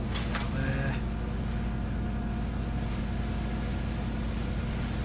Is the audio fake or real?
real